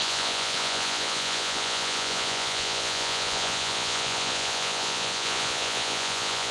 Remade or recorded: remade